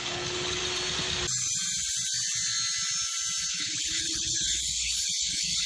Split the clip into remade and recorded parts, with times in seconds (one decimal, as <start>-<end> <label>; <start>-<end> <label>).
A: 0.0-0.6 remade; 0.6-3.5 recorded; 3.5-5.7 remade